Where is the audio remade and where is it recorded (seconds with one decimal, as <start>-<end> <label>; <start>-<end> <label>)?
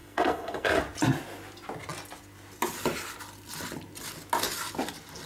0.0-0.8 remade; 0.8-5.3 recorded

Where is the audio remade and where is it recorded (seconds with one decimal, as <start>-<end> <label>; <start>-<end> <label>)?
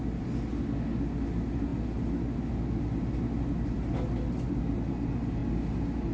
0.0-6.1 recorded